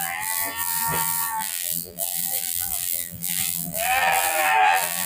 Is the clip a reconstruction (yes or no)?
yes